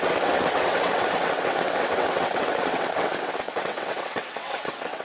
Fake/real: fake